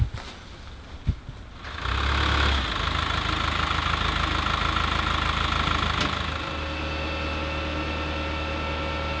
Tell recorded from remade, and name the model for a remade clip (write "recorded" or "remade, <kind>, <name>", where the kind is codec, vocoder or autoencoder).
recorded